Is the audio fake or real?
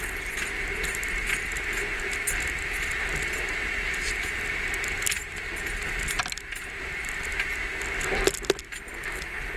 real